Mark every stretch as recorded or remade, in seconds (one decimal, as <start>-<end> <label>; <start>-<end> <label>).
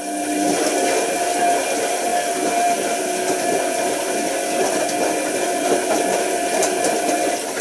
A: 0.0-7.6 recorded